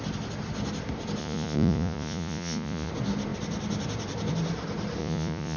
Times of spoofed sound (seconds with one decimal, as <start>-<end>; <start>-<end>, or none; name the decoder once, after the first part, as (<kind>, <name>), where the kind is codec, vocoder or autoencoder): 1.2-2.9 (vocoder, Vocos); 5.0-5.6